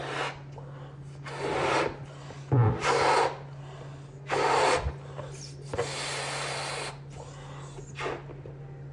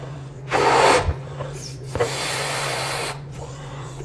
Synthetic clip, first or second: second